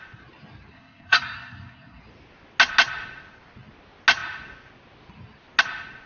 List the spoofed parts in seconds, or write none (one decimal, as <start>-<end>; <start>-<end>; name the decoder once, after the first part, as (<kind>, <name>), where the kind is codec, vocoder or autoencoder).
0.7-2.0 (codec, SNAC)